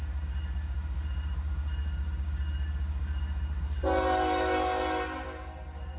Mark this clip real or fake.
real